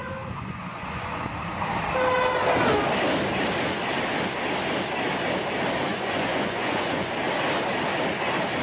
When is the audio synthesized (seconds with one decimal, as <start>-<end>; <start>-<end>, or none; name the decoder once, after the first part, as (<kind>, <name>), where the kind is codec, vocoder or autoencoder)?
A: 0.0-1.3 (vocoder, Vocos); 5.9-7.1